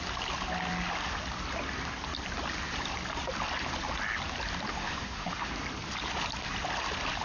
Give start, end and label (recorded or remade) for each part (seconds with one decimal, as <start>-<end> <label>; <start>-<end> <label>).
0.0-4.7 recorded; 4.7-5.5 remade; 5.5-7.2 recorded